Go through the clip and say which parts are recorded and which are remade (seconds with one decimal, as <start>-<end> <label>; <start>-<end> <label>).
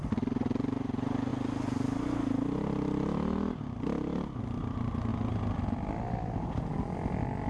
0.0-7.5 recorded